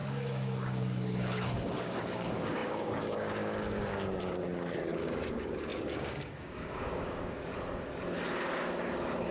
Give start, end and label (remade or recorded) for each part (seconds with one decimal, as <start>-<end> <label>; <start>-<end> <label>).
0.0-7.5 remade; 7.5-9.3 recorded